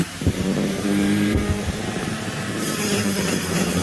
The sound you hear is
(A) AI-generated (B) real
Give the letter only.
A